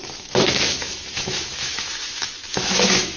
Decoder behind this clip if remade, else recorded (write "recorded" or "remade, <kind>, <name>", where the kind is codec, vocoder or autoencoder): remade, autoencoder, DAC-VAE